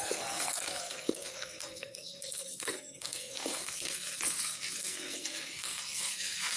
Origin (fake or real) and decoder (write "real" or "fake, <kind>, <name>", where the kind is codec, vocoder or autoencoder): fake, codec, SNAC